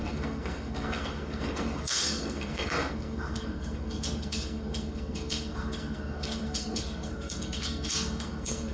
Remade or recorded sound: remade